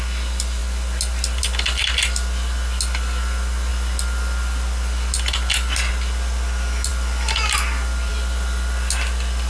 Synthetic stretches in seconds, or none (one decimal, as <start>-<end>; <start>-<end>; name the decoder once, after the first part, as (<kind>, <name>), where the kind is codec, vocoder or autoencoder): none